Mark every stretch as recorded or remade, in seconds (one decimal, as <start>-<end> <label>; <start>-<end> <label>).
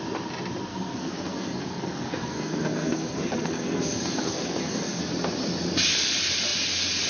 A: 0.0-0.7 recorded; 0.7-5.0 remade; 5.0-7.1 recorded